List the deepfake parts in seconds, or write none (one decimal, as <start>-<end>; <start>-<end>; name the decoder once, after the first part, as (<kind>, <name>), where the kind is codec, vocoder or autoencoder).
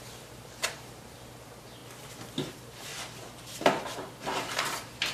0.0-1.8 (vocoder, BigVGAN v2); 2.5-2.9; 3.5-5.1